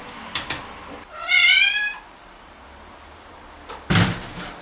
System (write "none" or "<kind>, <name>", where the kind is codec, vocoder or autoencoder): vocoder, BigVGAN v2